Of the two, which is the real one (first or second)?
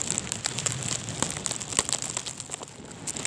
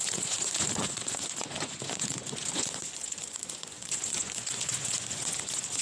first